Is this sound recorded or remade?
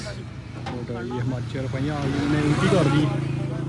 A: recorded